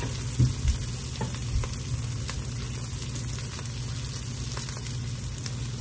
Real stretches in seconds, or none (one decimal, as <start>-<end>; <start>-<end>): 0.0-5.8